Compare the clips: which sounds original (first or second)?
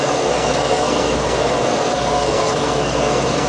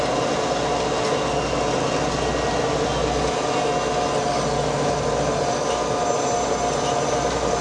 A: second